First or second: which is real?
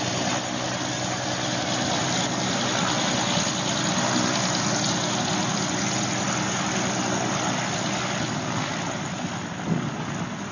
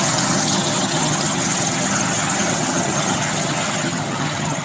first